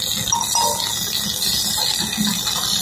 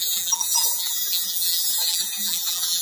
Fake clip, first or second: second